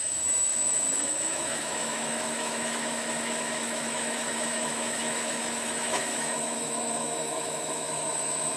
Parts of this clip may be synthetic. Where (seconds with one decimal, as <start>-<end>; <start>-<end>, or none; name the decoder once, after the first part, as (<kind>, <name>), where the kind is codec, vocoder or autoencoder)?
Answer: 0.0-8.6 (autoencoder, DAC-VAE)